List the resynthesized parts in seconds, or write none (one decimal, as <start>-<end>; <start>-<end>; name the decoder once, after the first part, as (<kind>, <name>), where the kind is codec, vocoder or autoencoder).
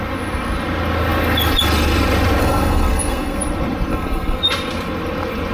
2.4-3.4 (codec, SNAC); 3.9-4.4